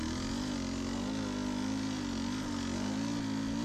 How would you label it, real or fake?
real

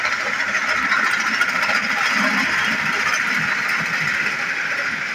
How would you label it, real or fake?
real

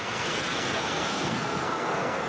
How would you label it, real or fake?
fake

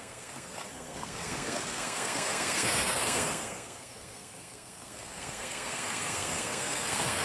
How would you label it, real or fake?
fake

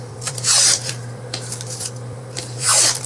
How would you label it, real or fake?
fake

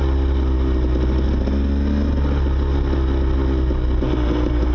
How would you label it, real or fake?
real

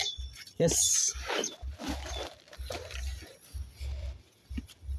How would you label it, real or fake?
real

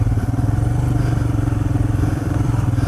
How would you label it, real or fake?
fake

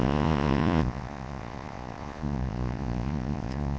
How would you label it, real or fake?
fake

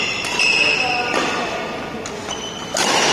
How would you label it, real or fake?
real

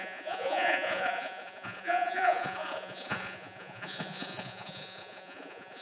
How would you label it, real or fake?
fake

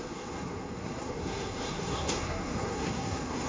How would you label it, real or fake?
fake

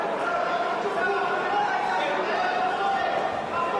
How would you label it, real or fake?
real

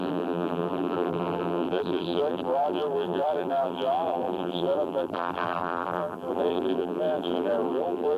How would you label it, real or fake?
fake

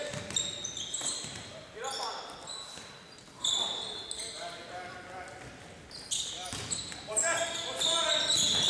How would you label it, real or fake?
real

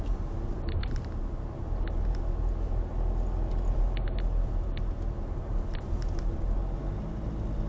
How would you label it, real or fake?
real